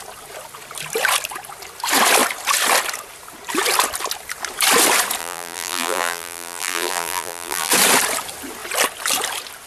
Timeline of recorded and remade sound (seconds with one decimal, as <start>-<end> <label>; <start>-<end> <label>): 0.0-5.2 recorded; 5.2-7.7 remade; 7.7-9.7 recorded